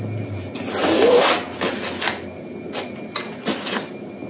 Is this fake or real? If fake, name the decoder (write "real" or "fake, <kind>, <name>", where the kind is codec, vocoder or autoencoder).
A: real